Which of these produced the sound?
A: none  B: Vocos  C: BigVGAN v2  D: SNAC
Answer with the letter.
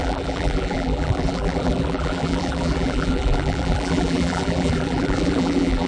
C